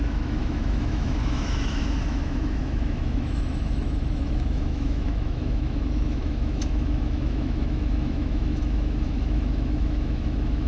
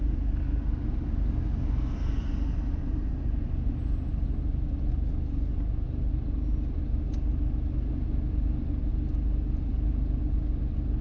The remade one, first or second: first